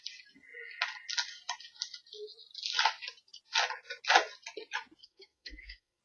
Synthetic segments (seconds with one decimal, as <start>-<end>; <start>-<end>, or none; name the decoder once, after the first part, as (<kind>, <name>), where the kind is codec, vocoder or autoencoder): 5.0-6.0 (codec, SNAC)